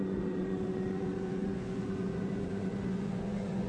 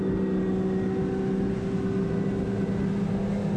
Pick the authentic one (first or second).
second